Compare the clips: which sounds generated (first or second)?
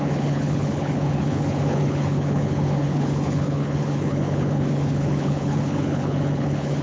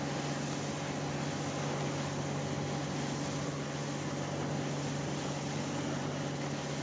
first